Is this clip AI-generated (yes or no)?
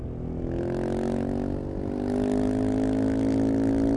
no